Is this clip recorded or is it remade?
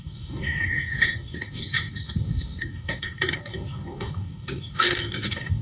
remade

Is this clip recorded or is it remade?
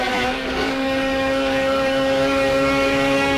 remade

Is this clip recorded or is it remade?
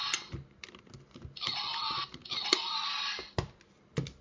recorded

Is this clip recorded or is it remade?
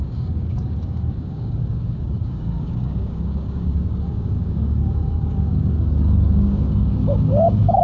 remade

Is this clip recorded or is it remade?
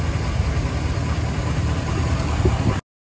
recorded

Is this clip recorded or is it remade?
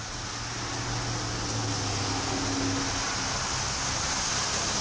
recorded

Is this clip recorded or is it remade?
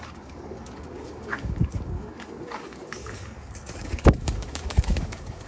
remade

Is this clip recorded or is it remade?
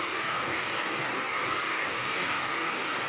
remade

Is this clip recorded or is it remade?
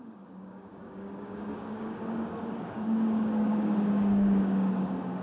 remade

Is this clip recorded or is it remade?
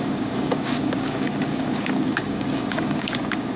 remade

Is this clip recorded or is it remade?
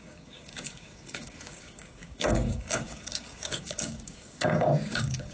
remade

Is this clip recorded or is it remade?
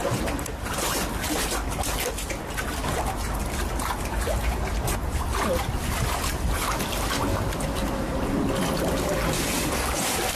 recorded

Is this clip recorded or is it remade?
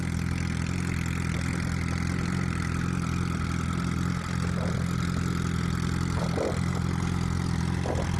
recorded